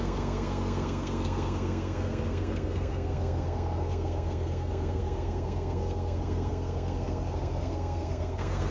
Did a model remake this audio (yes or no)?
yes